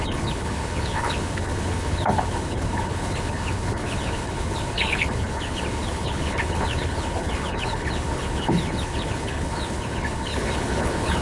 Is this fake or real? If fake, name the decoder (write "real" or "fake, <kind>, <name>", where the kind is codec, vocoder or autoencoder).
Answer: fake, codec, HILCodec